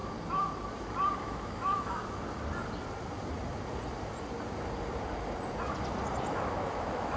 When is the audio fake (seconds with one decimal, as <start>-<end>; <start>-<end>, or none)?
1.2-2.0; 6.3-7.2

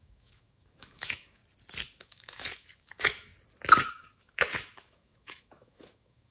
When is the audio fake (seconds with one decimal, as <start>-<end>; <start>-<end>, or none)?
0.0-1.4; 2.0-3.3; 3.9-6.3